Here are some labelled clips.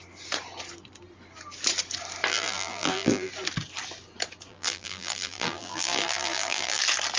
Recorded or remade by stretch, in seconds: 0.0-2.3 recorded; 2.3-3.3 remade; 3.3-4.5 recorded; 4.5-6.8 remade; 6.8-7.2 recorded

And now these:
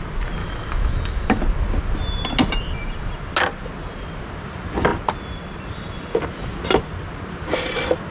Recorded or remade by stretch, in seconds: 0.0-0.4 recorded; 0.4-1.4 remade; 1.4-8.1 recorded